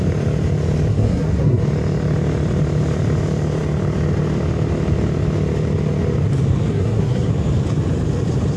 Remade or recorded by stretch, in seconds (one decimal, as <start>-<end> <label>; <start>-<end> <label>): 0.0-0.9 recorded; 0.9-1.6 remade; 1.6-6.7 recorded; 6.7-7.3 remade; 7.3-8.6 recorded